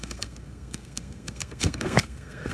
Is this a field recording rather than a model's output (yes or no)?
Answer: no